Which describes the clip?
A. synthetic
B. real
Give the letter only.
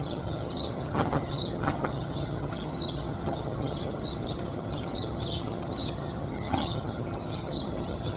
A